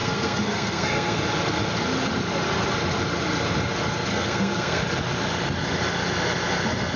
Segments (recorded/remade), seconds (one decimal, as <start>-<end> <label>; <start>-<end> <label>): 0.0-1.2 remade; 1.2-4.1 recorded; 4.1-4.8 remade; 4.8-7.0 recorded